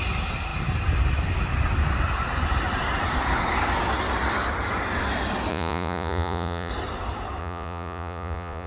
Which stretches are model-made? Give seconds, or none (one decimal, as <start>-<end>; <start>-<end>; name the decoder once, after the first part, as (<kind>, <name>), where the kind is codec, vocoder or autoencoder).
5.5-6.7 (vocoder, Vocos); 7.4-8.7